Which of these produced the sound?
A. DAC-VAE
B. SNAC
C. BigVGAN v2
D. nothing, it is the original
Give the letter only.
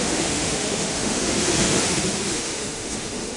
A